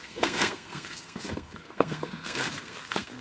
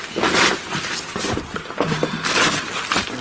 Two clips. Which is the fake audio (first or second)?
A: first